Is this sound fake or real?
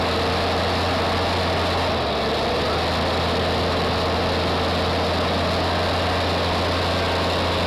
real